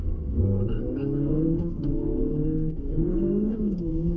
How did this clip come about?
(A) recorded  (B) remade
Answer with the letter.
B